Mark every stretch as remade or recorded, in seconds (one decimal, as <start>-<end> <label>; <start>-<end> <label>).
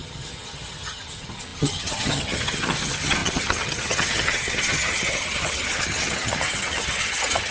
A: 0.0-7.5 remade